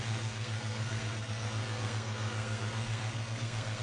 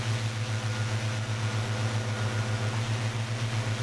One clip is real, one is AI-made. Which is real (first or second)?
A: second